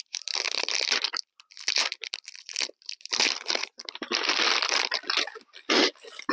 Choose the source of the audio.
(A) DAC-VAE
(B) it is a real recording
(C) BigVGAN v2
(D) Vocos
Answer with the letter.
C